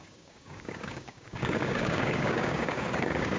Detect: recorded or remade remade